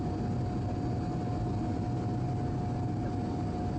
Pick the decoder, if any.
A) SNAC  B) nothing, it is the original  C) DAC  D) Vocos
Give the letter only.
B